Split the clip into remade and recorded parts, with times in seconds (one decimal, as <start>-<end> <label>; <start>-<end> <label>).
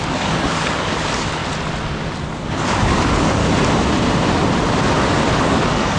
0.0-1.4 remade; 1.4-2.3 recorded; 2.3-3.4 remade; 3.4-5.3 recorded; 5.3-6.0 remade